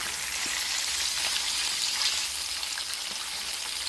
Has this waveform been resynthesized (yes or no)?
no